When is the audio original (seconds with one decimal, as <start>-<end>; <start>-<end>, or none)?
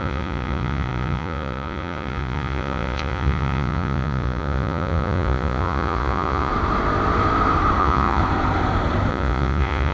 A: 6.5-7.8; 8.2-9.1